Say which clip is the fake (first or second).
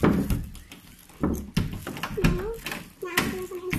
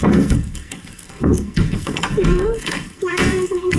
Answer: second